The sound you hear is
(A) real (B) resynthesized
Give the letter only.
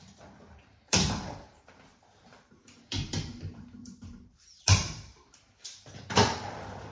B